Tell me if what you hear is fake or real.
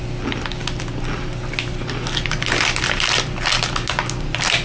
real